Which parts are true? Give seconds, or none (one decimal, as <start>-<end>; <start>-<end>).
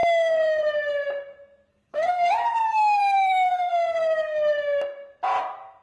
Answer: 0.0-1.7; 2.3-2.7; 3.7-5.8